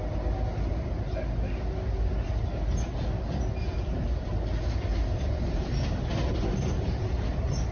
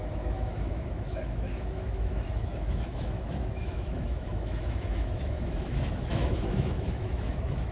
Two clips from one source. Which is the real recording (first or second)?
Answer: first